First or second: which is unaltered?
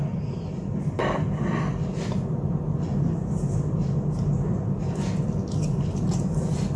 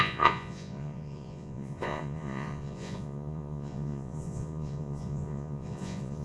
first